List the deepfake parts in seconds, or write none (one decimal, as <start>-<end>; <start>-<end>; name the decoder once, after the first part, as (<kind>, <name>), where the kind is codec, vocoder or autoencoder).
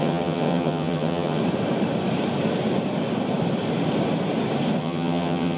0.0-1.4 (vocoder, HiFi-GAN); 4.8-5.6